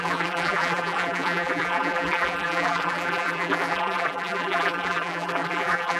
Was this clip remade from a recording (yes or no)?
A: yes